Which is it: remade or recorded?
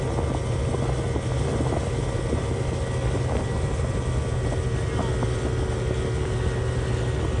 recorded